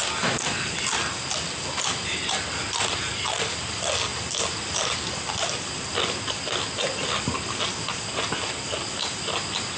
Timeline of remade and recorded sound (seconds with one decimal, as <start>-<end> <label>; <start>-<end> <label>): 0.0-9.8 recorded